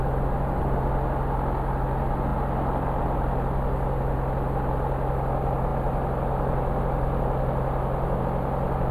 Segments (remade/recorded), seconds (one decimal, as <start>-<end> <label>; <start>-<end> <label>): 0.0-8.9 recorded